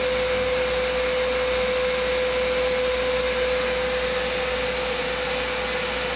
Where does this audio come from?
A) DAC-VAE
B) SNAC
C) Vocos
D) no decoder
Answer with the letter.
D